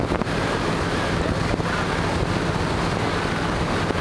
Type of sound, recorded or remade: recorded